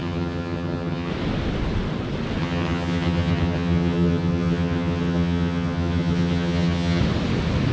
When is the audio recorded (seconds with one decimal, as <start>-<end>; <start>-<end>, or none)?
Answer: 1.1-2.4; 7.0-7.7